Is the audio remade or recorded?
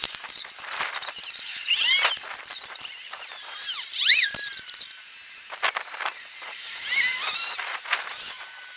remade